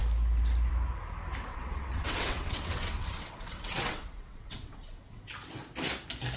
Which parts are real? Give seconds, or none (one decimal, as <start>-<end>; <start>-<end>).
0.0-1.5; 5.3-6.4